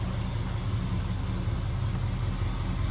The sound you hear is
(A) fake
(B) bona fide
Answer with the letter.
B